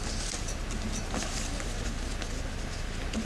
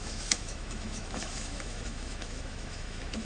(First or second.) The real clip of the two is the first